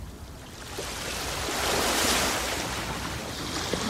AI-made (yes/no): no